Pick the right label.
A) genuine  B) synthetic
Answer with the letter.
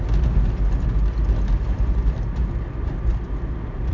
A